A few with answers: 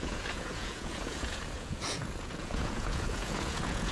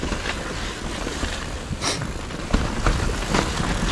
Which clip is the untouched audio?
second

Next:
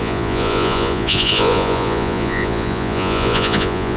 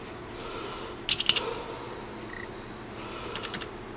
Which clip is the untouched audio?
second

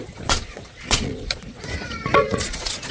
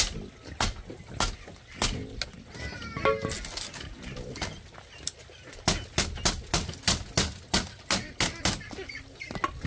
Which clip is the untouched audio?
second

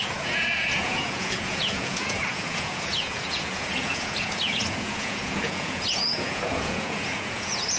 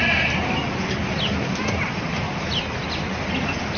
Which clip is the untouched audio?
second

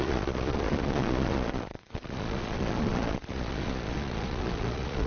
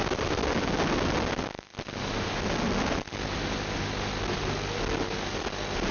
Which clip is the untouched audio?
second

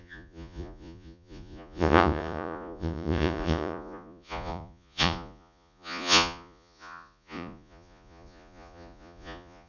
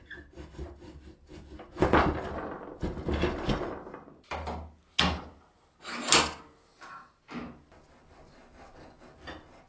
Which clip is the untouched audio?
second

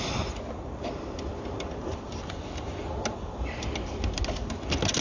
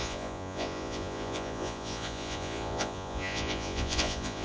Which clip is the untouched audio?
first